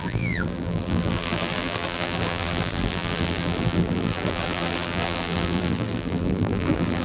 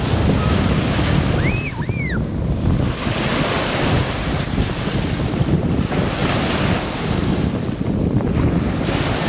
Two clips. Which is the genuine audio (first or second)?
second